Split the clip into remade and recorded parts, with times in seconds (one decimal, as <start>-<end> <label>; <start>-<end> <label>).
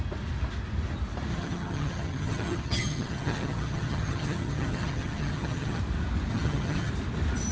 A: 0.0-1.3 recorded; 1.3-5.8 remade; 5.8-6.3 recorded; 6.3-6.9 remade; 6.9-7.5 recorded